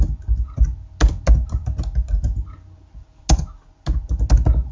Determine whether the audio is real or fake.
real